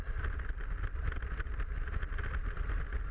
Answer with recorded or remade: recorded